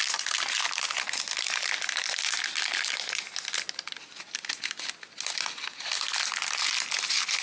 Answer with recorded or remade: recorded